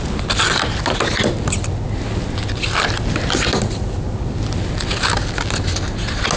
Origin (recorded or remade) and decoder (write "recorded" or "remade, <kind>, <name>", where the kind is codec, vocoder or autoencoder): recorded